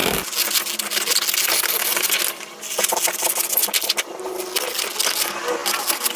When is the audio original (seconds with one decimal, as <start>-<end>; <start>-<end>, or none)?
0.0-6.2

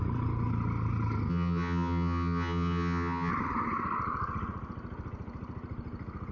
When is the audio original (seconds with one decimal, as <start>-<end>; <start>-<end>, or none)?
0.0-1.3; 3.3-6.3

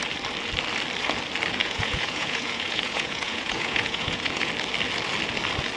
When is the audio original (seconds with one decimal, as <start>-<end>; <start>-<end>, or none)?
0.0-1.6; 4.5-5.8

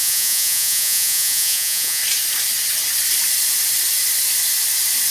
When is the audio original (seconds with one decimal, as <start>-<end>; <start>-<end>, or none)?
2.0-5.1

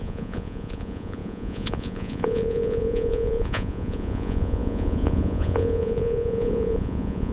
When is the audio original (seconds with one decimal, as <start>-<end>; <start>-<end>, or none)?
none